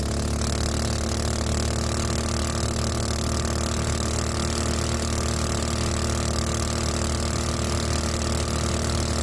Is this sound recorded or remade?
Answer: recorded